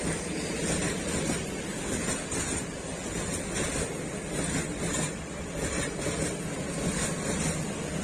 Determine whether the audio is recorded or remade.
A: recorded